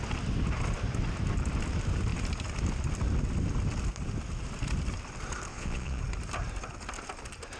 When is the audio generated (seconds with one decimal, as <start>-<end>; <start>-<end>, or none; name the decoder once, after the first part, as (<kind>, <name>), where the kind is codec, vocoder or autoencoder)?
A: 5.5-6.0 (vocoder, Vocos)